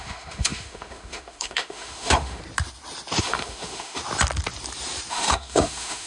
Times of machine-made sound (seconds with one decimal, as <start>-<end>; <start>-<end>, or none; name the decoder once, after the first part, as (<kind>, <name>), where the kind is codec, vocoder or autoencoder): 0.0-2.4 (autoencoder, DAC-VAE); 3.2-4.0; 5.1-6.1